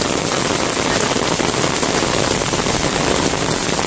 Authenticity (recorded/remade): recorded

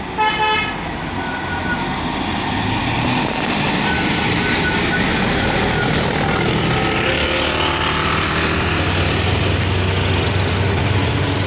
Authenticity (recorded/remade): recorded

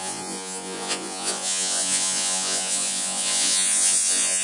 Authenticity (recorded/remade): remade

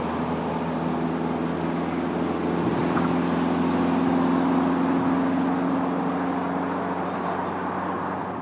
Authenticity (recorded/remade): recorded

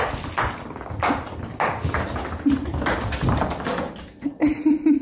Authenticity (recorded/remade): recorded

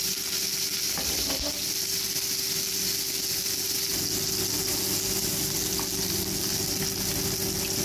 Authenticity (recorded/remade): recorded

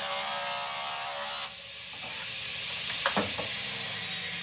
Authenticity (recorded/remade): recorded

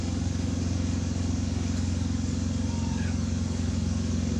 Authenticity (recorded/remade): remade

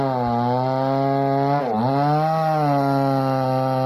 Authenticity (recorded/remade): recorded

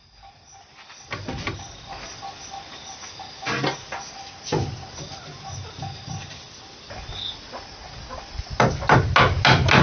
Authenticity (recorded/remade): recorded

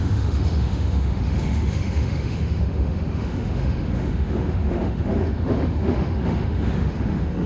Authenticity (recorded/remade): remade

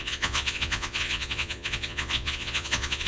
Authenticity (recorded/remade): remade